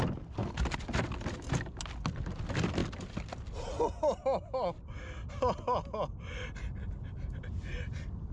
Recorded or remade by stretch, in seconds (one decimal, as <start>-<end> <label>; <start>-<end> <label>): 0.0-8.3 recorded